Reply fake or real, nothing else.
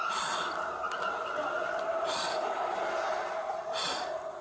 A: real